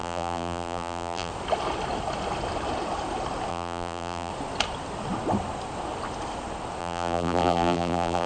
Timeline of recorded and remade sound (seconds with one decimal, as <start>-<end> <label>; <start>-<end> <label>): 0.0-1.3 remade; 1.3-3.5 recorded; 3.5-4.3 remade; 4.3-6.8 recorded; 6.8-8.3 remade